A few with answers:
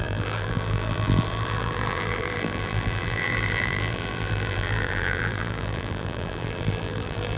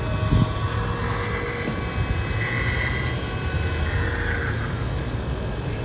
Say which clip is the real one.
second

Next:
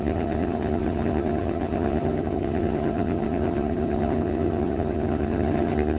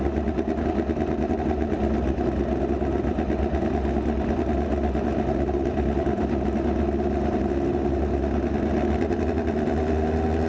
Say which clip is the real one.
second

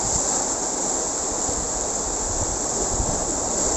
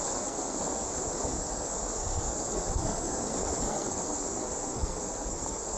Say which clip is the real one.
first